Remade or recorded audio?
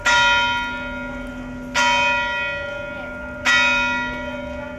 recorded